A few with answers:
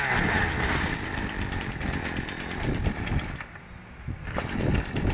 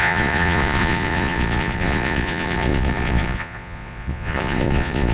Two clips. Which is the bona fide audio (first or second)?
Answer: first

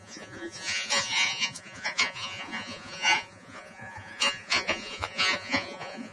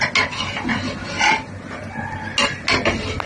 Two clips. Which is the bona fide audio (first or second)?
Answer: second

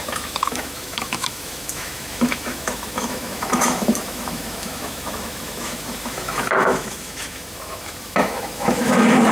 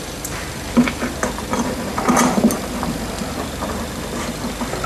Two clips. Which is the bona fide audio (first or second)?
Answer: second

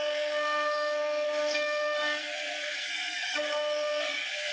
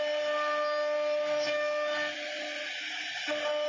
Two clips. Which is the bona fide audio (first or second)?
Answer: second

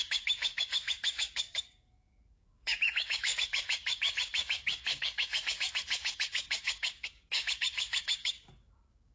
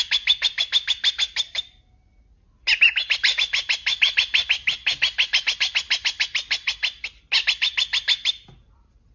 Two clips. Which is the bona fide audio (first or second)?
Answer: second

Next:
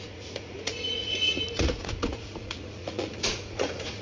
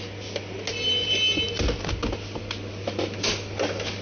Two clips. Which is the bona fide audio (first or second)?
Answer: second